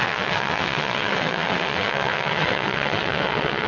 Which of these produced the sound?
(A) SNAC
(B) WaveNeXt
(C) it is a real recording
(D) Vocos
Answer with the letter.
B